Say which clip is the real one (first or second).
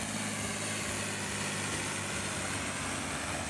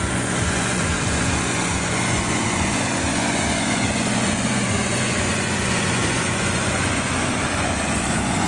first